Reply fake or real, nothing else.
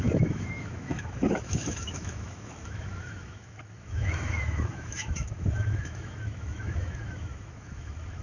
fake